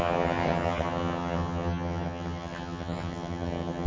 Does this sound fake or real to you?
fake